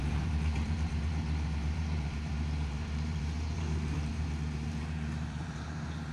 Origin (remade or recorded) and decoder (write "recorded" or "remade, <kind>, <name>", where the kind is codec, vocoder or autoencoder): remade, vocoder, BigVGAN v2